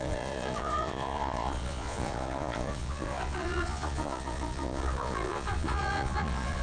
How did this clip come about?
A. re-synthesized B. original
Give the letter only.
A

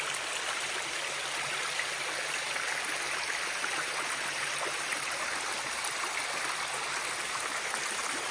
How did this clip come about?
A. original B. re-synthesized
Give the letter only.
A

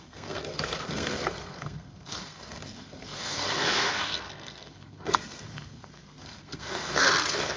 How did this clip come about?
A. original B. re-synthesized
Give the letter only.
B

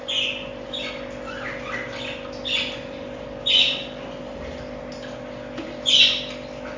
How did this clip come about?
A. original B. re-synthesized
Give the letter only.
A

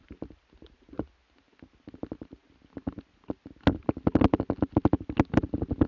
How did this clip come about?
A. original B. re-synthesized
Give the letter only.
A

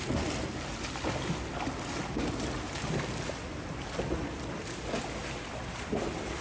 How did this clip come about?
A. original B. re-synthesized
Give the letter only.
A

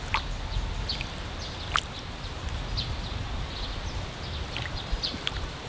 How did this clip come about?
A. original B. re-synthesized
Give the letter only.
A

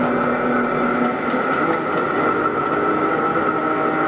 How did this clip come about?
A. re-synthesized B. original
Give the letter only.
B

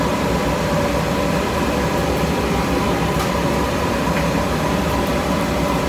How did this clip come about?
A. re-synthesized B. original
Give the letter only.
A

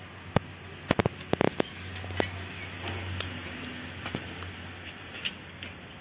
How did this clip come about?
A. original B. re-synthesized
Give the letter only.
A